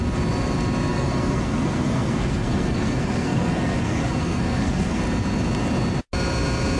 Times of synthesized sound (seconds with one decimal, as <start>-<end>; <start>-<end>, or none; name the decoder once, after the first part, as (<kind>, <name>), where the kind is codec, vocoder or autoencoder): 0.9-5.0 (codec, SNAC)